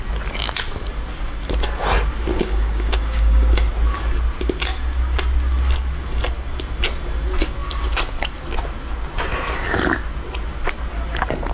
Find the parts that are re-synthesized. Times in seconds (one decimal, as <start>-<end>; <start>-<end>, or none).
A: 2.3-3.7